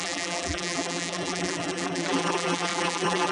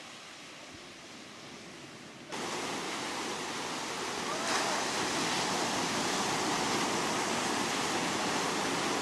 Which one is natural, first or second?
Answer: second